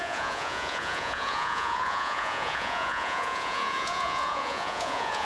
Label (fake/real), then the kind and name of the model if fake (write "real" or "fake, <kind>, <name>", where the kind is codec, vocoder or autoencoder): fake, vocoder, Vocos